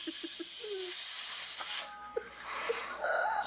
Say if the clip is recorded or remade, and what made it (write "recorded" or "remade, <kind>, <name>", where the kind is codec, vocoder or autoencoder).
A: recorded